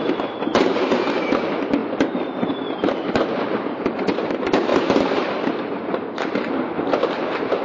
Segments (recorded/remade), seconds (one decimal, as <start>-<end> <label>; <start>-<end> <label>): 0.0-0.5 recorded; 0.5-1.4 remade; 1.4-1.8 recorded; 1.8-4.3 remade; 4.3-4.7 recorded; 4.7-5.5 remade; 5.5-7.6 recorded